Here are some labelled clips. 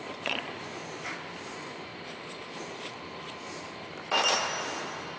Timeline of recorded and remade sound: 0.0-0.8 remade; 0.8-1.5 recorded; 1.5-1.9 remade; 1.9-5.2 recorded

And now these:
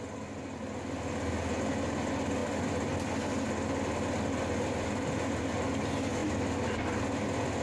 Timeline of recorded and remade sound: 0.0-7.6 recorded

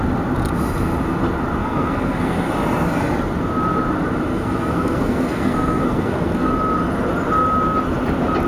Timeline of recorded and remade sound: 0.0-1.6 recorded; 1.6-2.5 remade; 2.5-4.3 recorded; 4.3-6.5 remade; 6.5-8.5 recorded

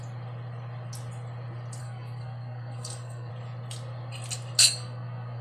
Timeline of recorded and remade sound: 0.0-1.8 recorded; 1.8-3.3 remade; 3.3-4.6 recorded; 4.6-5.4 remade